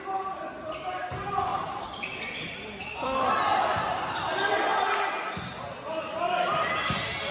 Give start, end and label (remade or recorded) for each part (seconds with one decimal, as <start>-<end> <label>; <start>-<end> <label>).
0.0-1.5 recorded; 1.5-2.5 remade; 2.5-7.3 recorded